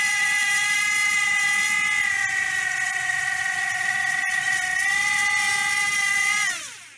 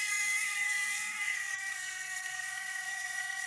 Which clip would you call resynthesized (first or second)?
second